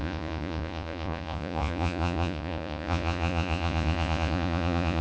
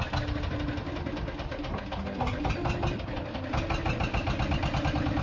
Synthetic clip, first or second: first